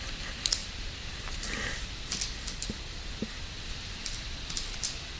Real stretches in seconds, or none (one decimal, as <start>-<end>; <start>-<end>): 0.0-0.6; 1.9-3.2